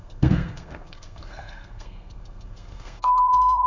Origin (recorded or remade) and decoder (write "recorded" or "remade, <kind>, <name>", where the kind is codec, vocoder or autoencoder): remade, codec, SNAC